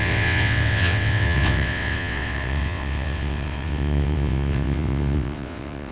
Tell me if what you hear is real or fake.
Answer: fake